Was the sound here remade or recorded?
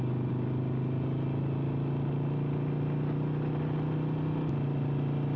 recorded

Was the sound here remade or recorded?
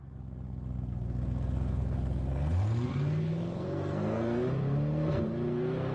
remade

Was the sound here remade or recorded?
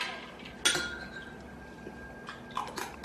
recorded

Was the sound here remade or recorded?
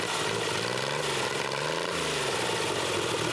recorded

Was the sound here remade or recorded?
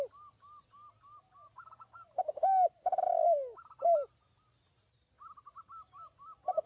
recorded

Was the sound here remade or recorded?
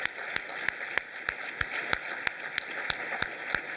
recorded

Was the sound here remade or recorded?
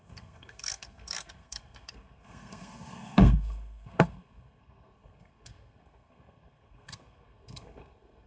remade